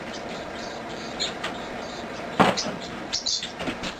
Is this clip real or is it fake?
fake